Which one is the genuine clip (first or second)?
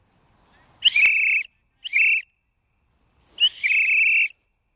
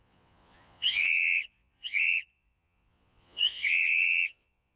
first